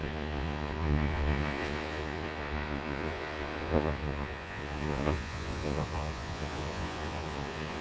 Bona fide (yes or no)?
no